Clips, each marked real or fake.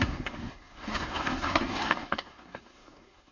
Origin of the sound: fake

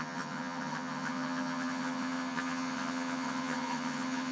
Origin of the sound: fake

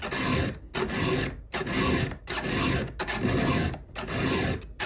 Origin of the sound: real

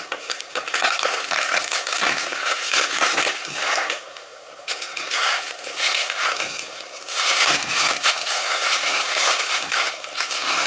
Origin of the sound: fake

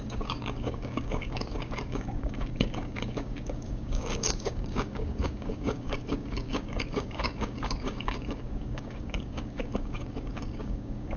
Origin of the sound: fake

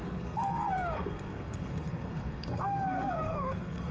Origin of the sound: fake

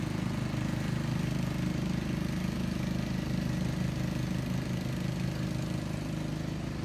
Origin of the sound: real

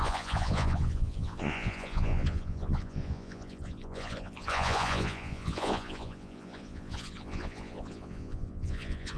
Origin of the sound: fake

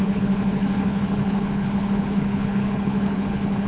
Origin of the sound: fake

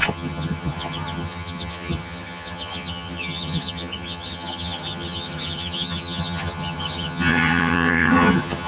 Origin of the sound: fake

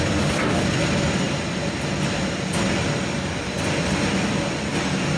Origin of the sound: real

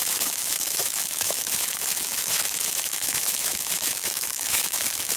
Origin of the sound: fake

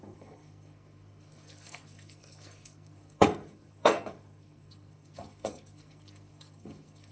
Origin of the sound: fake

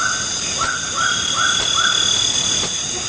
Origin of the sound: real